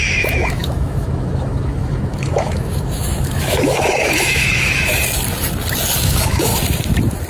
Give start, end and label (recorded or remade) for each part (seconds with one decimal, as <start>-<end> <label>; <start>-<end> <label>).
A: 0.0-4.9 remade; 4.9-6.0 recorded; 6.0-6.5 remade; 6.5-7.3 recorded